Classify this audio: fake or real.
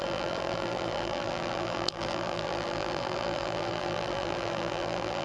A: fake